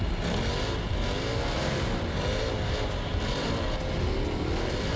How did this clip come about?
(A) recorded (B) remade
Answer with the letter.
A